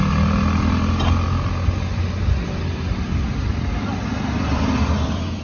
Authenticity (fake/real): real